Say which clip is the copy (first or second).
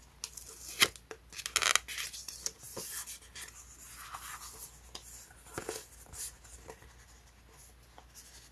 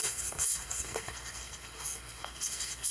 second